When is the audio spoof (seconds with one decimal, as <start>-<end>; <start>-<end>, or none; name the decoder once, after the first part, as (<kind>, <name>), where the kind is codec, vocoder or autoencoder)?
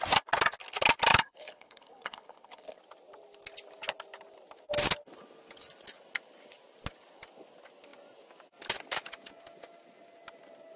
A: 1.1-2.8 (codec, HILCodec)